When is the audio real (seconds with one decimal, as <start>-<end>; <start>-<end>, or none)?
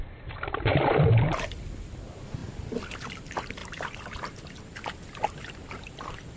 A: 2.4-3.1; 3.6-5.5